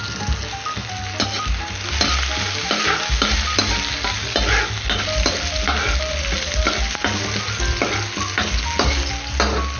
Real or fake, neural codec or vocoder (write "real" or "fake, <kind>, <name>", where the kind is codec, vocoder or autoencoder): real